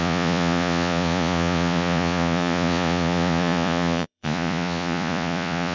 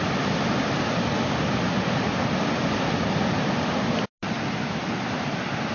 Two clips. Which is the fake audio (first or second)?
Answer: first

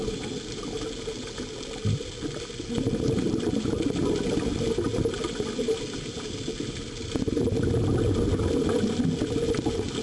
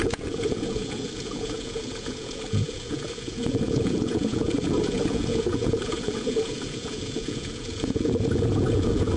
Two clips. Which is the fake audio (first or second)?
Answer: second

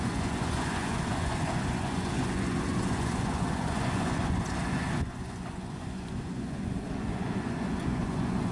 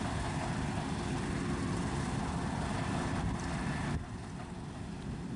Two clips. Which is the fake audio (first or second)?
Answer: first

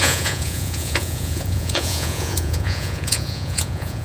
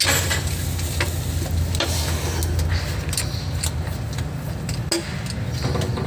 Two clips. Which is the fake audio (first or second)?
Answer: first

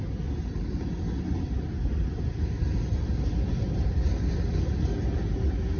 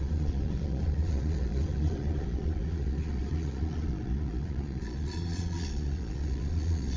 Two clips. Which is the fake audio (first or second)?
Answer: second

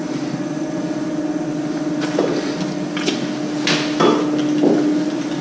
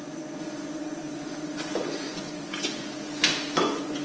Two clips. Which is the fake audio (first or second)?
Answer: second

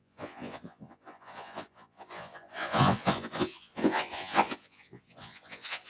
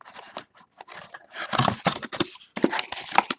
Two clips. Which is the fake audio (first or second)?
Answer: first